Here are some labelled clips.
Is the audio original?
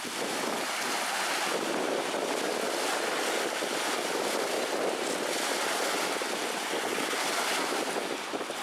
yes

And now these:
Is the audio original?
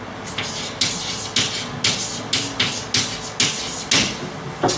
yes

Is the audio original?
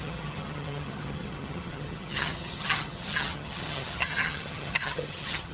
no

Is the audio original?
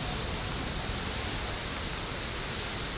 yes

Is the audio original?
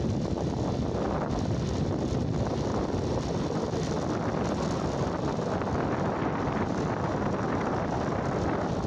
yes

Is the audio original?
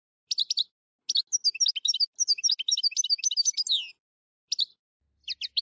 yes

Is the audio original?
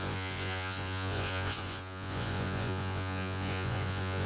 no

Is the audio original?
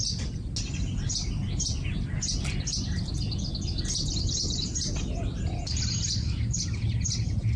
yes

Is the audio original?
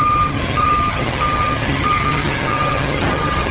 no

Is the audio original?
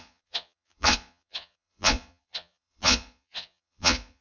no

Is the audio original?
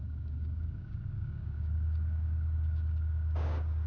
no